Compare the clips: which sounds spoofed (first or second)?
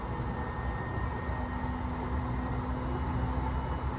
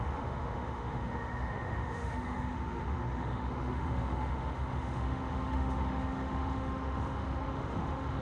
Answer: second